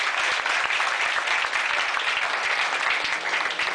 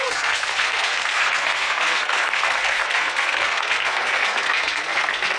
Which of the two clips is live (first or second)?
first